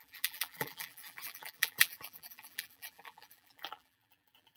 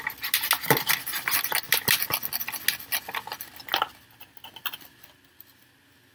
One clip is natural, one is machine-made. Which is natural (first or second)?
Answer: second